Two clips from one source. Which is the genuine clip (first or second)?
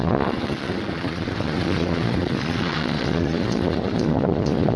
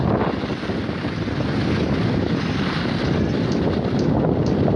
second